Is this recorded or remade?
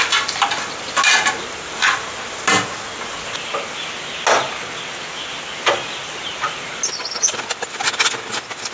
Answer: recorded